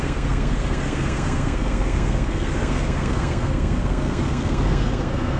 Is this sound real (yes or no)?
no